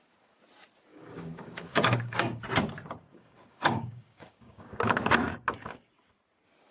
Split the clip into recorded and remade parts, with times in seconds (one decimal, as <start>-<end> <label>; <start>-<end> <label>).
0.0-0.9 recorded; 0.9-2.4 remade; 2.4-3.1 recorded; 3.1-4.8 remade; 4.8-6.7 recorded